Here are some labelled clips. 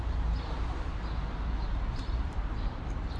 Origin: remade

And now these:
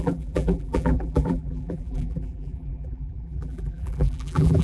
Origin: remade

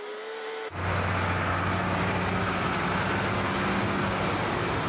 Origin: recorded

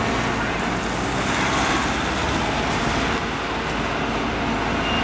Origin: recorded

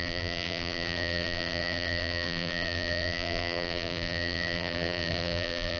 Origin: remade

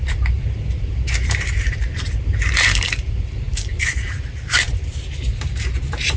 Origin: remade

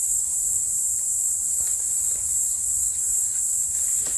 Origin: remade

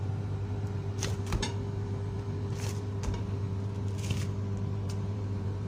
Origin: remade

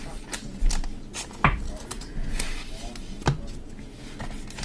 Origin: recorded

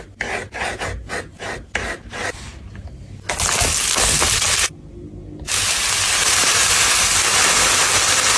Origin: recorded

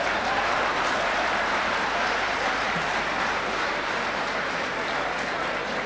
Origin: remade